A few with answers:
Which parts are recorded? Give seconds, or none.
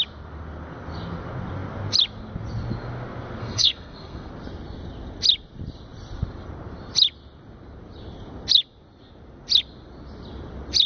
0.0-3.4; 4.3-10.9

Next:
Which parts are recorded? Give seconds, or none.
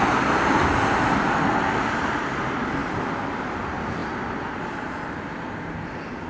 0.0-6.3